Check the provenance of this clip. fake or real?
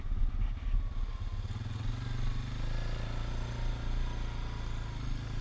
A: real